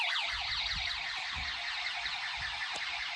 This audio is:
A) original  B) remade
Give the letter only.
A